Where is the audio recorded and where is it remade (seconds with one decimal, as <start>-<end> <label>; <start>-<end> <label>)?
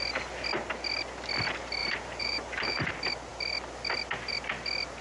0.0-1.8 recorded; 1.8-2.9 remade; 2.9-5.0 recorded